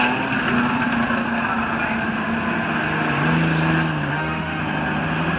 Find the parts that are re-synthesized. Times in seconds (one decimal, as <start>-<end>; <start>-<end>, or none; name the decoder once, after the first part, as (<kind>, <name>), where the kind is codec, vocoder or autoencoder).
4.1-4.6 (autoencoder, DAC-VAE)